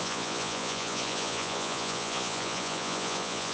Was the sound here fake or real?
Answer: fake